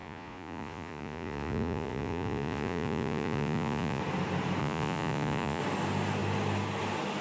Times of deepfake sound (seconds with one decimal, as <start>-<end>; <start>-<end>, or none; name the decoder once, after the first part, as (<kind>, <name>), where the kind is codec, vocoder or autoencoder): 0.0-4.0 (vocoder, Vocos); 4.6-5.6